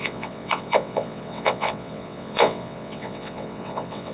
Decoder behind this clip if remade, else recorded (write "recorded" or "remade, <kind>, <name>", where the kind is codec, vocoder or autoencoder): remade, vocoder, WaveNeXt